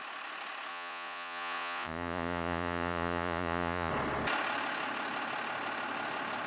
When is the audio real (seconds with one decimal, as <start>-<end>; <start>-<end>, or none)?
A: 0.0-0.7; 3.9-6.5